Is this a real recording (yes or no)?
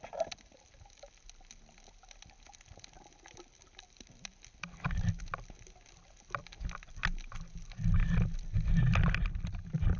yes